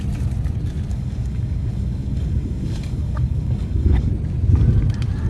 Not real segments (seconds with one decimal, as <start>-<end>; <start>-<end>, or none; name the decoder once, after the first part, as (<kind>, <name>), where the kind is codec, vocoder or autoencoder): 0.9-4.1 (codec, DAC)